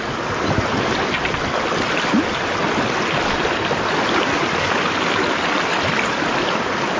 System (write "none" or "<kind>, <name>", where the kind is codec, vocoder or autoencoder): none